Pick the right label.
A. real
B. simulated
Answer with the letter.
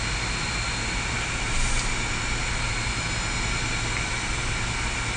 A